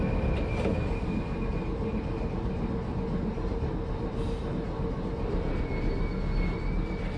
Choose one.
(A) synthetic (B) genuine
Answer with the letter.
B